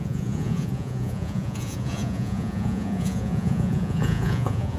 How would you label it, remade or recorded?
remade